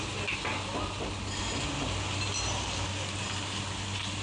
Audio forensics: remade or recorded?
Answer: recorded